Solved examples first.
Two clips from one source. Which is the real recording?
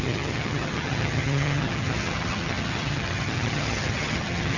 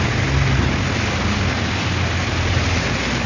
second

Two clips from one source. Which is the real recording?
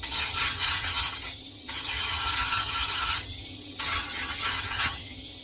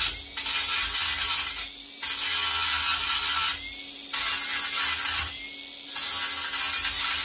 second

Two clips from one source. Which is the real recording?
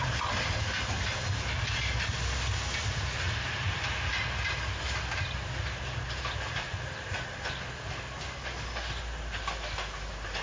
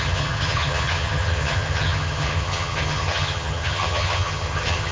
first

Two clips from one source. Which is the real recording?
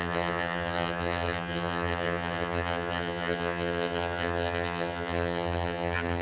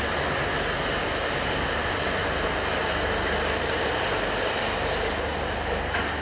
second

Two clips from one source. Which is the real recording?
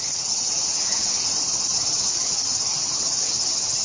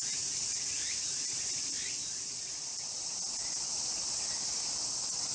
second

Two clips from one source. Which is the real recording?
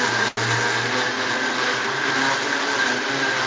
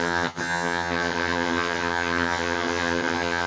first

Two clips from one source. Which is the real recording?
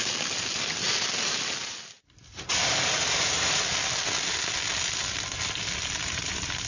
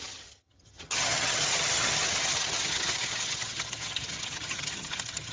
first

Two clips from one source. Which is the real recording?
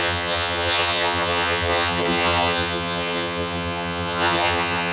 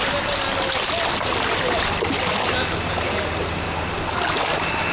second